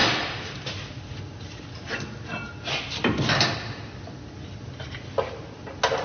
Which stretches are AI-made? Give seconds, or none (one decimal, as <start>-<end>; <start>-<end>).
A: none